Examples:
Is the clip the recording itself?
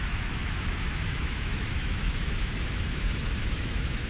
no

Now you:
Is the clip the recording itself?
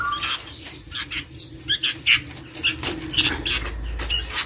yes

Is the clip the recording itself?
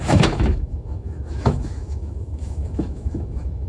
no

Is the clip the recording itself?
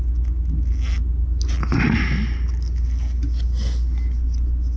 yes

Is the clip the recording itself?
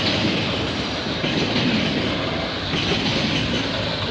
yes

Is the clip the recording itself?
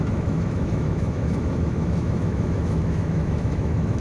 no